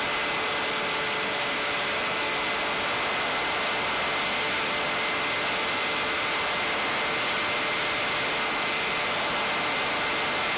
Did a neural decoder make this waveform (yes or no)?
no